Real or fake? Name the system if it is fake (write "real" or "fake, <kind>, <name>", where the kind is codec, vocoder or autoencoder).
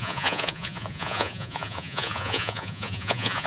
fake, vocoder, Vocos